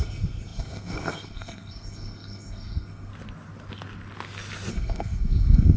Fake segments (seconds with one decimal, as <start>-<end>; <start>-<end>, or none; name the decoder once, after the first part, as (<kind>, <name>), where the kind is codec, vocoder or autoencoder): 0.0-3.1 (codec, SNAC); 4.7-5.8